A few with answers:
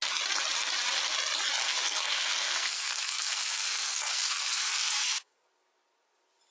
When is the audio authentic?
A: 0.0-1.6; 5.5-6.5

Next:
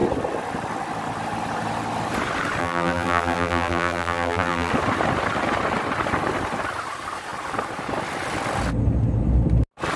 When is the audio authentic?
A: 0.0-2.6; 4.7-10.0

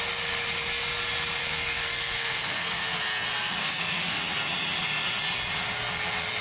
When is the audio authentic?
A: 0.0-1.4; 3.0-3.6; 4.2-6.4

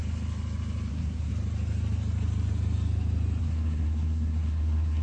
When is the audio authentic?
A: 0.0-0.9; 1.3-3.4

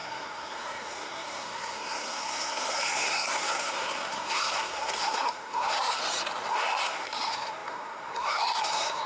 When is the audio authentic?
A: 6.0-6.5

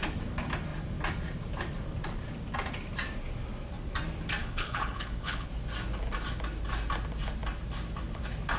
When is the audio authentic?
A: 0.0-4.4; 5.5-8.6

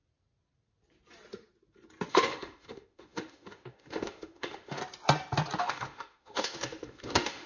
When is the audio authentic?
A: 0.0-2.1; 4.8-5.6

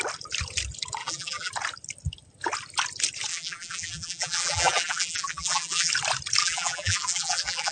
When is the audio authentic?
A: 0.0-1.0; 1.5-3.3; 5.9-6.4